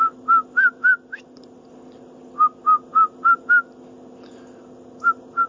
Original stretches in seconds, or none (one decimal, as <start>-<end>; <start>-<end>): 0.0-5.5